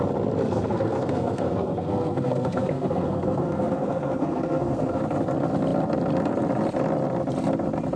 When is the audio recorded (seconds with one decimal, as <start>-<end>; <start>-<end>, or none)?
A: 0.0-0.4; 5.0-8.0